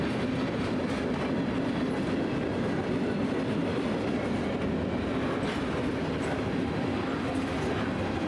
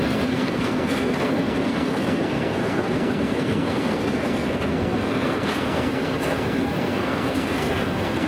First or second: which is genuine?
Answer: first